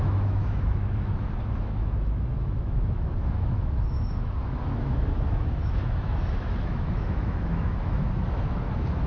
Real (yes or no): no